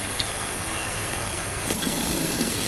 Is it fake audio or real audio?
fake